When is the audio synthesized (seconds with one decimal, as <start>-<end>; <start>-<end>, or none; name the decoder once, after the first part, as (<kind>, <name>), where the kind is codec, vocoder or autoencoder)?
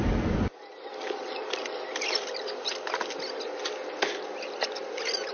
none